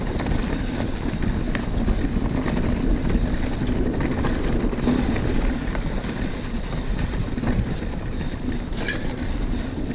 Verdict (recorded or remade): recorded